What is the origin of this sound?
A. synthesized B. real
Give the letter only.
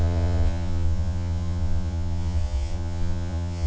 A